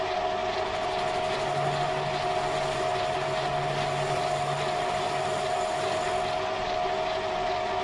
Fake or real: real